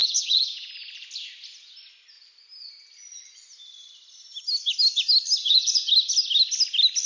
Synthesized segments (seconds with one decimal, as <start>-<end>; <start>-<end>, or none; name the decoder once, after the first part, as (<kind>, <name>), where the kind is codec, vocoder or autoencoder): 0.0-0.7 (vocoder, Vocos); 5.4-5.9

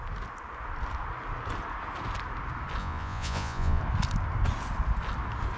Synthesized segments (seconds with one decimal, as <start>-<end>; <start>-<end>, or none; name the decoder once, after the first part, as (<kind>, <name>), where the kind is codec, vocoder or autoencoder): 2.8-3.8 (vocoder, Vocos)

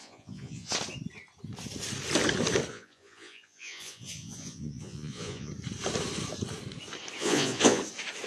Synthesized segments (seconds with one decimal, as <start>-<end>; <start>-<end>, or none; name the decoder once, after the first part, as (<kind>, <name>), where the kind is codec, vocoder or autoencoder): 0.0-0.7 (vocoder, Vocos); 2.7-5.5; 7.2-7.8

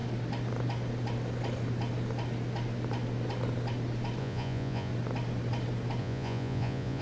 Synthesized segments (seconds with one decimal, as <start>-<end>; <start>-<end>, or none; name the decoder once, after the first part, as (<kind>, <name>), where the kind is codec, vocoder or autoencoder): 4.2-4.9 (vocoder, Vocos); 6.0-7.0

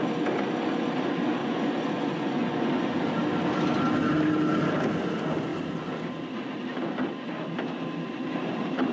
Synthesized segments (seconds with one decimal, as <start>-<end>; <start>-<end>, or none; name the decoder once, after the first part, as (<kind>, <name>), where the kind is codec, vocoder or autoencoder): 1.4-2.7 (vocoder, Vocos)

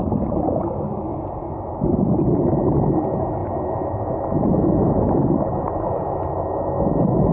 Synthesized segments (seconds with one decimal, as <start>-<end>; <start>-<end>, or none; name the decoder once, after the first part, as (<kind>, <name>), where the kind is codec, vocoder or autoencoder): none

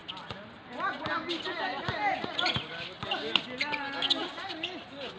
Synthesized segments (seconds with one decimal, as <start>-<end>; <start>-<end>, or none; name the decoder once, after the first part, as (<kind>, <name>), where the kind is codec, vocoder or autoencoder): none